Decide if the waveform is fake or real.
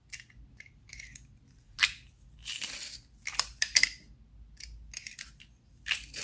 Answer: real